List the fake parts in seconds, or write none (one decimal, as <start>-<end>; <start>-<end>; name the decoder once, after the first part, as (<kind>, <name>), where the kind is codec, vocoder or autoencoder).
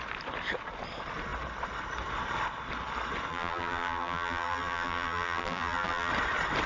3.3-6.1 (vocoder, BigVGAN v2)